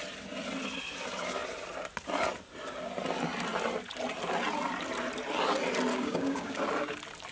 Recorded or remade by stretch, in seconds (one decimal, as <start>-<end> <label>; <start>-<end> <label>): 0.0-5.9 recorded; 5.9-6.6 remade; 6.6-7.3 recorded